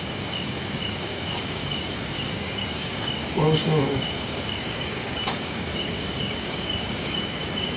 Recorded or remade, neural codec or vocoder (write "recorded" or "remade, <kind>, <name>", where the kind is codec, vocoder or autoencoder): remade, codec, DAC